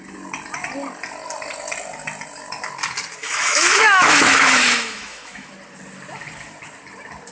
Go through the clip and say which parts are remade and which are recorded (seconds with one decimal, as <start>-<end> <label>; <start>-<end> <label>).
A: 0.0-3.2 recorded; 3.2-5.5 remade; 5.5-7.3 recorded